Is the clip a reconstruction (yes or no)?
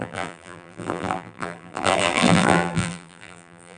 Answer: yes